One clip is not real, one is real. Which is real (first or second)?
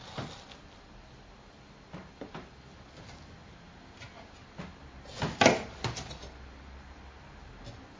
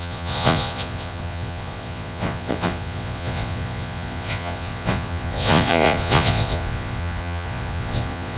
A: first